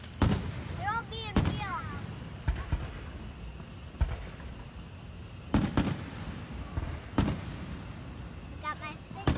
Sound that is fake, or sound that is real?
real